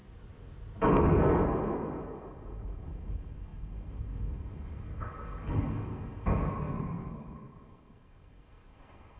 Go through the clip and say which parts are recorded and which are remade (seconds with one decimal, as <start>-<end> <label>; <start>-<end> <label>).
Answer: 0.0-0.9 recorded; 0.9-9.2 remade